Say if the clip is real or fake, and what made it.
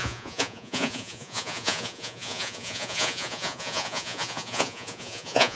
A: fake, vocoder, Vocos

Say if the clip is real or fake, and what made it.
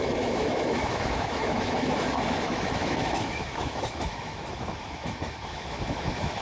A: fake, autoencoder, DAC-VAE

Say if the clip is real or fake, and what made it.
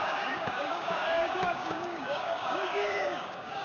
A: fake, codec, DAC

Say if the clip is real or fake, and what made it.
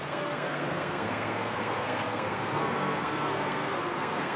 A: fake, codec, SNAC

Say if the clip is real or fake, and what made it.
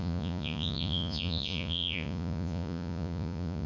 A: fake, vocoder, Vocos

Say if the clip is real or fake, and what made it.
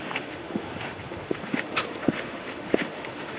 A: fake, autoencoder, DAC-VAE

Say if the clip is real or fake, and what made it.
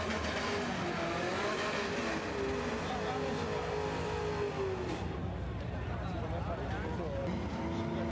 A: real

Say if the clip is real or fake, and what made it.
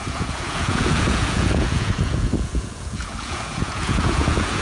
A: fake, vocoder, Vocos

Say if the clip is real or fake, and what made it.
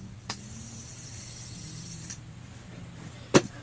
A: real